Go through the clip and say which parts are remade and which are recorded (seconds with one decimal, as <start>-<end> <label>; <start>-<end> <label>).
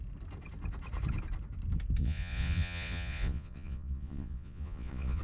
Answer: 0.0-2.0 recorded; 2.0-5.2 remade